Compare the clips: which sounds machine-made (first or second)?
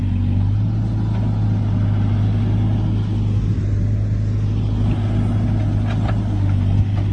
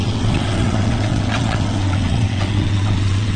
second